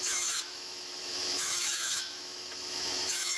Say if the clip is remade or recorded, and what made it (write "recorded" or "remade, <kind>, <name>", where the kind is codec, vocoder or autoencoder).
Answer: remade, autoencoder, DAC-VAE